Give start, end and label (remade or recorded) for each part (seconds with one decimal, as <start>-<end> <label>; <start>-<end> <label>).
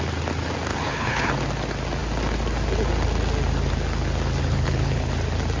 0.0-0.7 recorded; 0.7-1.3 remade; 1.3-4.4 recorded; 4.4-5.1 remade; 5.1-5.6 recorded